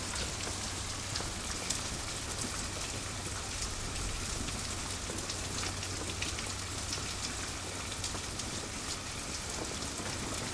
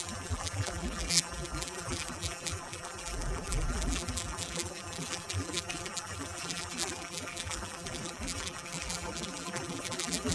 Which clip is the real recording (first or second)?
first